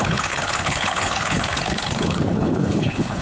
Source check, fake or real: fake